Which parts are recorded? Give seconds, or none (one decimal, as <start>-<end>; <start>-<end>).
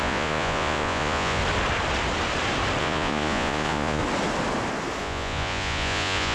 1.4-2.8; 4.0-5.0